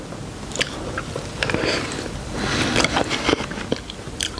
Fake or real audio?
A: real